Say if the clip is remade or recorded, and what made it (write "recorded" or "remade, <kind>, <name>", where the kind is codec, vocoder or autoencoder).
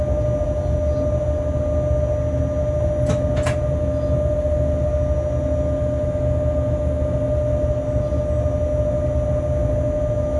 recorded